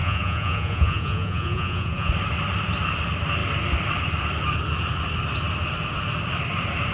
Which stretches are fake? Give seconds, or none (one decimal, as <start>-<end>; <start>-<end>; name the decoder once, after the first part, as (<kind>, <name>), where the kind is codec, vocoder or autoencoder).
0.0-2.1 (vocoder, Vocos)